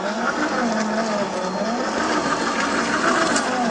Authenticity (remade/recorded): recorded